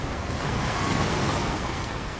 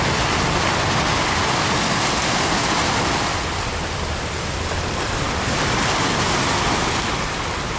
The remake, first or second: first